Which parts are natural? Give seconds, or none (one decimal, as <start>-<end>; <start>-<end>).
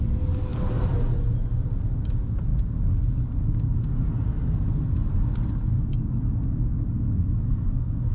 0.0-8.1